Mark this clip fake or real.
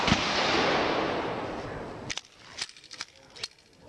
real